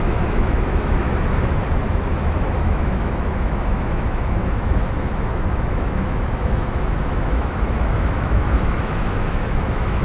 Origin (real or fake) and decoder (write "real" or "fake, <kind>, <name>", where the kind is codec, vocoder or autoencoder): fake, autoencoder, DAC-VAE